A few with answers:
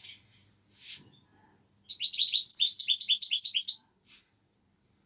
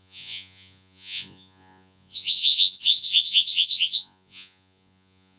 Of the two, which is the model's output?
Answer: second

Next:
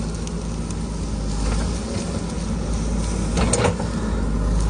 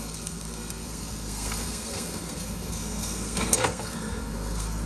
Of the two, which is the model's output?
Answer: second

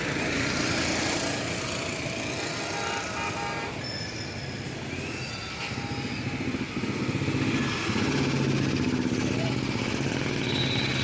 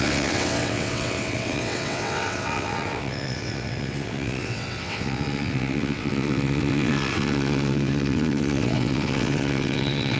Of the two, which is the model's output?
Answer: second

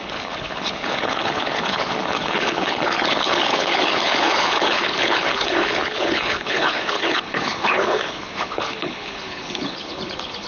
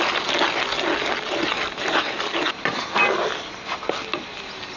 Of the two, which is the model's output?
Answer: first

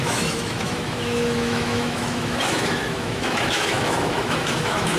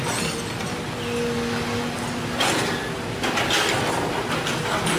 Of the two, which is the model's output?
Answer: first